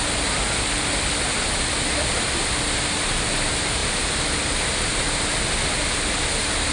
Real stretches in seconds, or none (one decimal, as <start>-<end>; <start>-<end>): 0.0-6.7